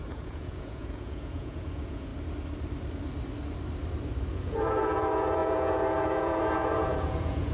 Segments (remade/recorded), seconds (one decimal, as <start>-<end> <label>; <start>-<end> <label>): 0.0-2.1 remade; 2.1-4.3 recorded; 4.3-7.5 remade